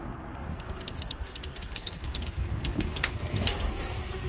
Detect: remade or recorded remade